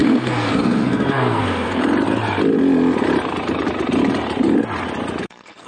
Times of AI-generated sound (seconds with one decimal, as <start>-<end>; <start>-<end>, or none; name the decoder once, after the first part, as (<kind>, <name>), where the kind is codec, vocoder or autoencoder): 0.0-1.8 (codec, SNAC); 5.2-5.7